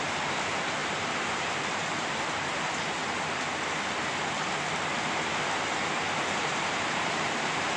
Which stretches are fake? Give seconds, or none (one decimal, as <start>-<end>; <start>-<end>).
0.0-3.0; 5.9-7.8